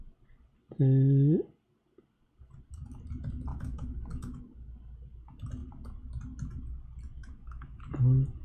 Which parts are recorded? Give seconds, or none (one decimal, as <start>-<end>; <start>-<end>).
0.0-3.5; 4.4-7.2; 7.8-8.4